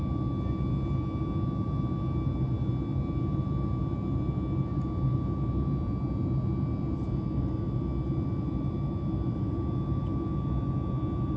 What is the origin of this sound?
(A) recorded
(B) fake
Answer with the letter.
A